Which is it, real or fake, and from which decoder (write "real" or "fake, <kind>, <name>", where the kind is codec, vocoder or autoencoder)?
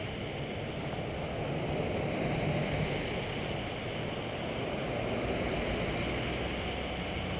real